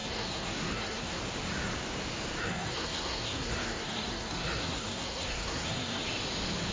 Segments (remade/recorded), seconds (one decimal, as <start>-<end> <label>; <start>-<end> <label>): 0.0-1.2 remade; 1.2-2.4 recorded; 2.4-6.0 remade; 6.0-6.7 recorded